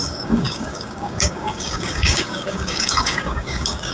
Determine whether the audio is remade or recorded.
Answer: remade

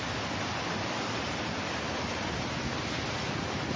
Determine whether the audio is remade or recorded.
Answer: recorded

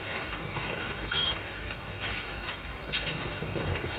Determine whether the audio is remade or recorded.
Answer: remade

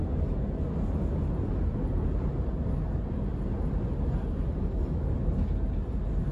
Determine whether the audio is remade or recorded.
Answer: recorded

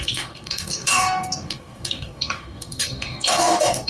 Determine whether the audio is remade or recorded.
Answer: remade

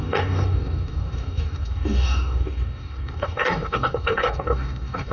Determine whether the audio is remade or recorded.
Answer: remade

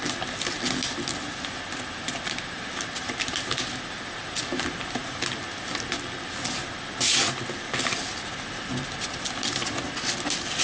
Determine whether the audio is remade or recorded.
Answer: recorded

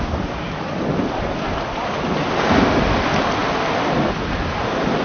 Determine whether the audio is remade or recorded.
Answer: recorded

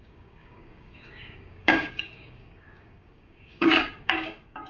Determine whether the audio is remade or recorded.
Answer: remade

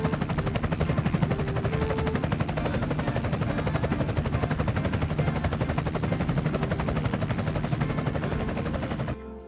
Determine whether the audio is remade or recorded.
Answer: recorded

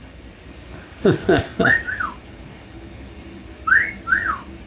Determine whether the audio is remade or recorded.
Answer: remade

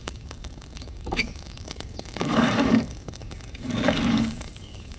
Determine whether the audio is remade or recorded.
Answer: remade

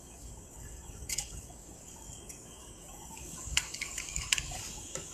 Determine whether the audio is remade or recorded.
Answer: remade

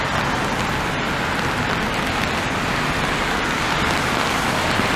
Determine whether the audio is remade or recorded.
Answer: recorded